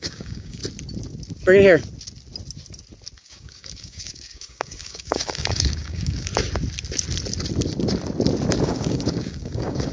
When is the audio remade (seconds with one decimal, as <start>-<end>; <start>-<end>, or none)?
0.0-0.6; 3.2-6.3; 8.6-9.9